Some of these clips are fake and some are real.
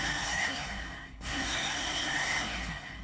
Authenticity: fake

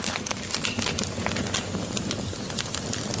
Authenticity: real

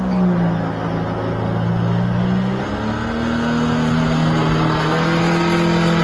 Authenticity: real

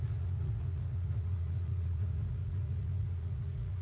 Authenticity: fake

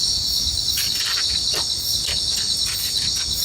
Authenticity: real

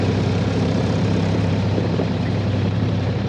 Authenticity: fake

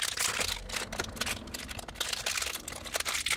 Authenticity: real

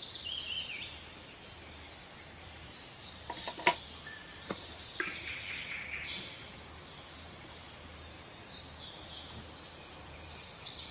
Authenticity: fake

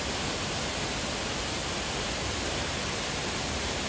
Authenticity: real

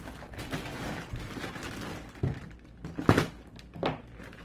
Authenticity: real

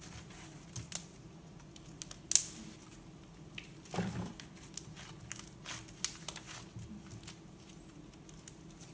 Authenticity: real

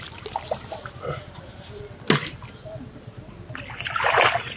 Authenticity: real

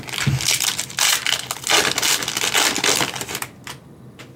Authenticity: real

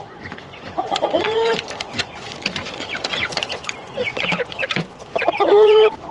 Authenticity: fake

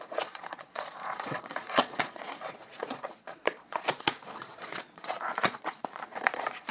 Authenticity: fake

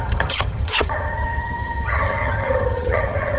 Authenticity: fake